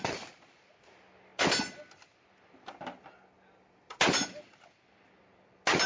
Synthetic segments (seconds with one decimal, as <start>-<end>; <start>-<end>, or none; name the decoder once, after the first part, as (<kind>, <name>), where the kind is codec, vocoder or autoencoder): none